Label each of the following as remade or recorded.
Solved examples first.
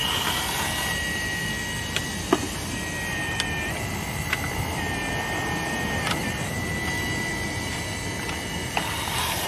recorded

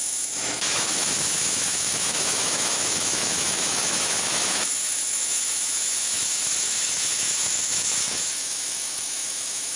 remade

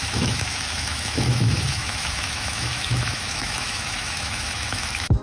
remade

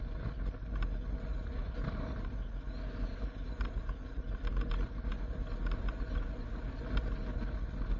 recorded